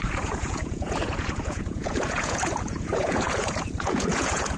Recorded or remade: remade